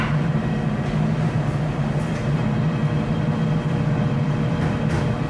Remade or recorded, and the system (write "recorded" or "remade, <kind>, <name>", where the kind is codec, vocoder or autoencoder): recorded